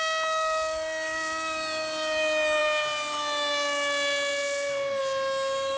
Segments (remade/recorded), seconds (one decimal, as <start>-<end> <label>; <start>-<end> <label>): 0.0-5.8 recorded